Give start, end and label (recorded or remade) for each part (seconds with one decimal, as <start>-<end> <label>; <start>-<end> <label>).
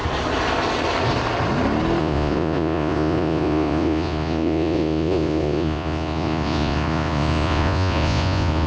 0.0-2.0 recorded; 2.0-8.7 remade